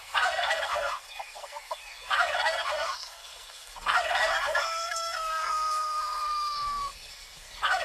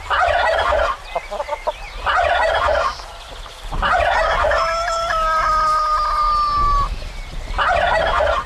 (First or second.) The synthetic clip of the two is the first